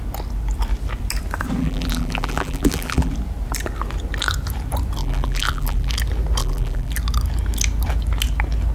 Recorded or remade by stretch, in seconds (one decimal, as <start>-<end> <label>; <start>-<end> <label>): 0.0-1.6 recorded; 1.6-3.1 remade; 3.1-5.0 recorded; 5.0-5.9 remade; 5.9-6.4 recorded; 6.4-6.9 remade; 6.9-8.7 recorded